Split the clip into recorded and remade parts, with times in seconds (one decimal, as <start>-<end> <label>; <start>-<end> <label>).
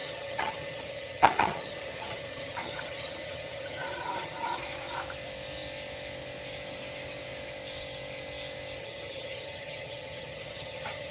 0.0-4.6 remade; 4.6-8.8 recorded; 8.8-11.1 remade